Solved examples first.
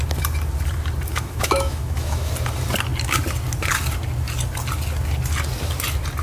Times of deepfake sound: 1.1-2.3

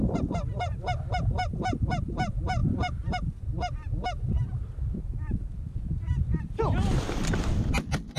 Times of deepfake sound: none

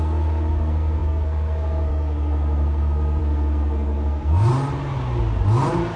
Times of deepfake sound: 0.0-4.5